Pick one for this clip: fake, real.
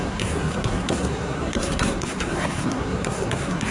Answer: fake